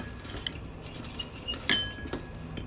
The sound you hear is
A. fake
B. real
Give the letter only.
B